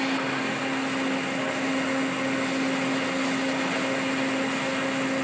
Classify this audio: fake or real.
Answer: real